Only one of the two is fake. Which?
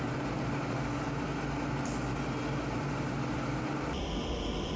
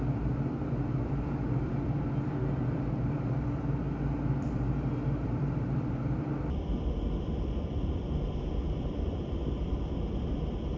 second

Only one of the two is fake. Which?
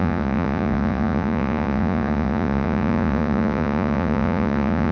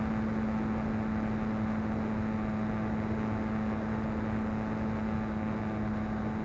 first